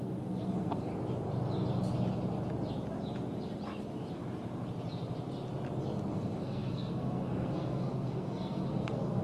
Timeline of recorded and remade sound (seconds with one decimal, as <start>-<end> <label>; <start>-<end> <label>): 0.0-0.9 remade; 0.9-6.1 recorded; 6.1-9.2 remade